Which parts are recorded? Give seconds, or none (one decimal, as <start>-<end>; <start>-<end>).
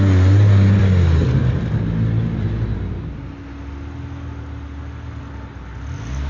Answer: 0.0-6.3